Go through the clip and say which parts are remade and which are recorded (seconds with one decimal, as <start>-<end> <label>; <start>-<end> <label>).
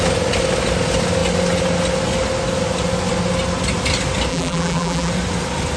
0.0-4.3 recorded; 4.3-5.1 remade; 5.1-5.8 recorded